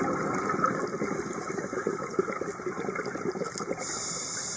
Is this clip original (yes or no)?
yes